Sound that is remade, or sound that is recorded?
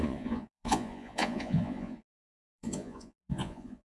remade